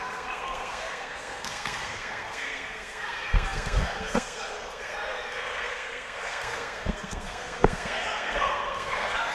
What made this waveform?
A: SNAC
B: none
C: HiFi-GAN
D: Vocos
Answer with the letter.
A